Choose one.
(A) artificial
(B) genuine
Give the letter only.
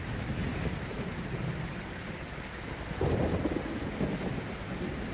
B